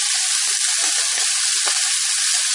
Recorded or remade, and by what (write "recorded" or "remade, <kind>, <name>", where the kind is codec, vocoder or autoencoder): recorded